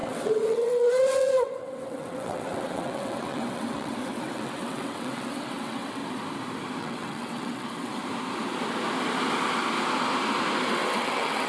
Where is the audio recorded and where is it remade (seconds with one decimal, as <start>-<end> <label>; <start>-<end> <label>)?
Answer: 0.0-6.0 remade; 6.0-6.8 recorded; 6.8-8.0 remade; 8.0-10.7 recorded; 10.7-11.5 remade